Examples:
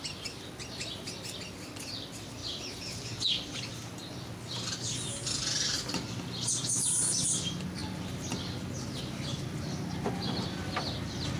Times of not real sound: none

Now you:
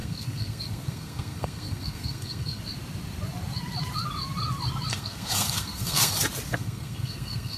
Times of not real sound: 0.0-2.6 (codec, SNAC); 4.9-6.1; 6.5-7.6